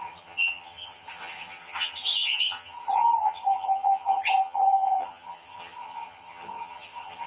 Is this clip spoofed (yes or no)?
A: yes